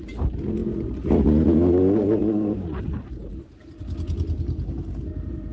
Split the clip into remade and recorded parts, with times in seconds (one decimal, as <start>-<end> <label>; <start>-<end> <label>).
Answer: 0.0-5.5 recorded